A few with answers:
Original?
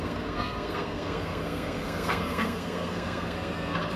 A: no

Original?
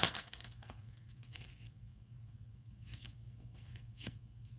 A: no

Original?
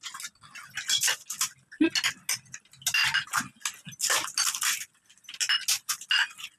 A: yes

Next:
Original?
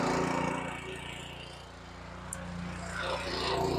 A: yes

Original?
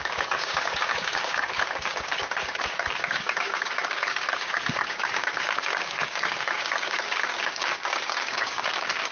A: no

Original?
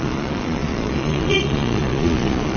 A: no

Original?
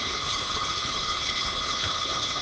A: no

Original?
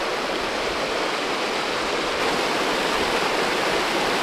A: yes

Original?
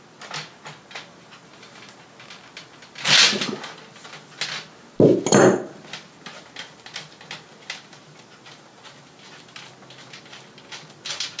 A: yes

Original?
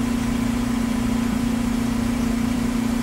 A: no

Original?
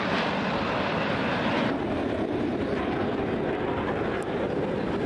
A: no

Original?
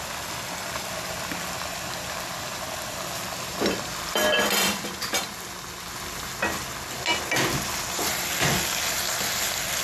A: yes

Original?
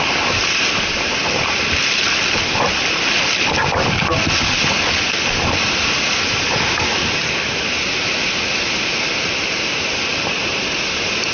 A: yes